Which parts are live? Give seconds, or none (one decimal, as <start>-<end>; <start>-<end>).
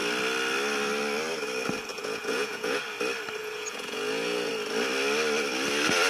0.0-1.9; 2.8-3.4; 4.5-6.1